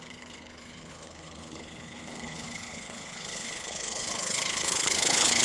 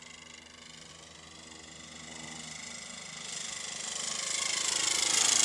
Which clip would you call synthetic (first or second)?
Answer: first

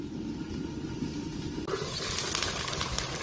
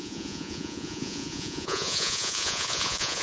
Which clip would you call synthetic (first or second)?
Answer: second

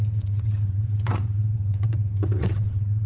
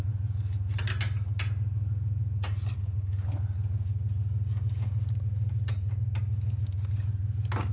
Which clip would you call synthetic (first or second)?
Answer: first